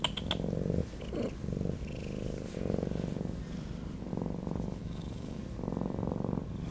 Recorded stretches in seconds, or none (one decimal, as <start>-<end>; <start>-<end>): 0.0-4.8; 5.4-6.7